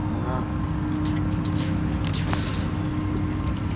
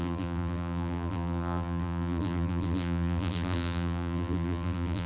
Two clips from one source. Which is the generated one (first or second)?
second